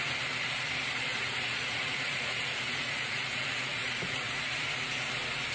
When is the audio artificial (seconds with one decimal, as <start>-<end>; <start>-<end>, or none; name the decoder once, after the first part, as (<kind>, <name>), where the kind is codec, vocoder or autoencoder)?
1.1-4.4 (vocoder, Vocos)